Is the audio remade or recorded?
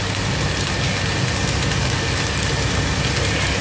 recorded